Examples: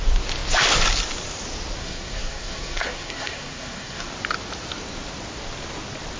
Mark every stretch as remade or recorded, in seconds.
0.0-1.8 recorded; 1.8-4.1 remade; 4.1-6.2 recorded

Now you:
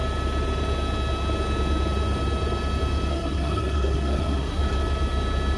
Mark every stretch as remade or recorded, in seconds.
0.0-3.1 recorded; 3.1-4.6 remade; 4.6-5.6 recorded